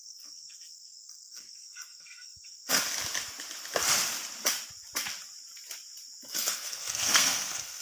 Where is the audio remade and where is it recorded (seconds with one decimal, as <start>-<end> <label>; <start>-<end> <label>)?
0.0-2.8 remade; 2.8-6.3 recorded; 6.3-7.8 remade